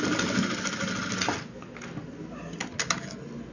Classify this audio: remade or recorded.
recorded